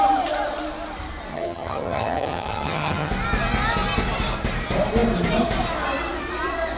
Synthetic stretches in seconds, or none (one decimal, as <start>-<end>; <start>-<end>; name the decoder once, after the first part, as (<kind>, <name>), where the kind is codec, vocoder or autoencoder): 1.3-3.1 (vocoder, HiFi-GAN)